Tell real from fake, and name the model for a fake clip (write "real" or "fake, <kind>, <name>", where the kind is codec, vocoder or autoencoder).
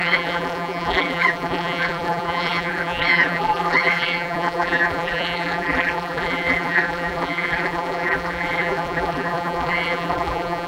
fake, vocoder, BigVGAN v2